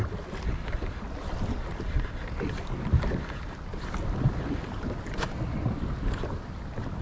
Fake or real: real